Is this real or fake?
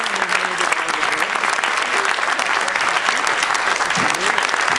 real